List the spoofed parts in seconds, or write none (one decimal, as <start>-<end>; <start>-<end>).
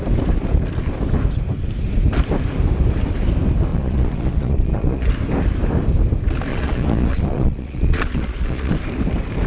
3.7-5.1; 6.5-8.7